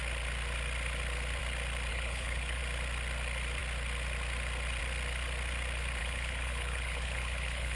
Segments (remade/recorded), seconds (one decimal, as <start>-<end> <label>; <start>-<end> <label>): 0.0-1.9 recorded; 1.9-2.6 remade; 2.6-6.0 recorded; 6.0-7.8 remade